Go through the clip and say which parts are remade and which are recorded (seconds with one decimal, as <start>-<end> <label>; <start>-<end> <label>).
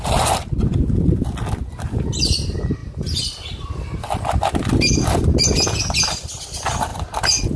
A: 0.0-7.6 recorded